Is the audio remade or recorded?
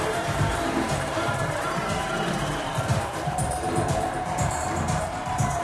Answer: remade